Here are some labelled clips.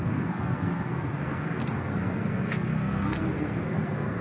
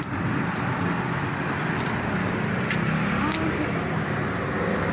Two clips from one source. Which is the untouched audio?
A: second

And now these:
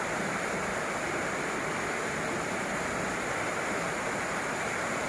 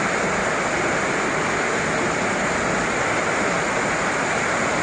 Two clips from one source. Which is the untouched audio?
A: second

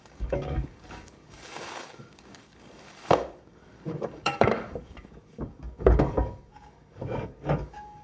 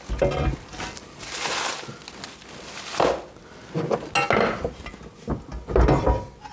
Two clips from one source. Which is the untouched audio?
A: second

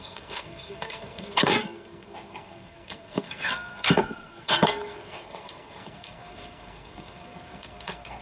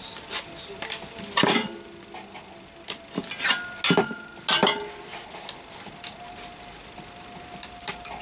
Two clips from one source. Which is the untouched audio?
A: second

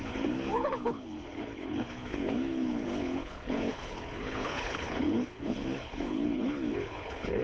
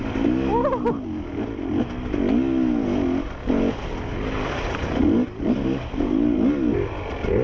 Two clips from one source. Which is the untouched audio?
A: second